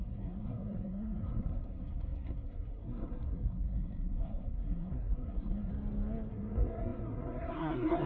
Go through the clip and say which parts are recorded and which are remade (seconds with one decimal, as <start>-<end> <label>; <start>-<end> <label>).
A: 0.0-5.7 remade; 5.7-6.3 recorded; 6.3-8.1 remade